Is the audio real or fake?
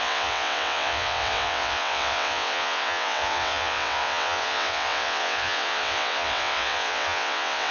fake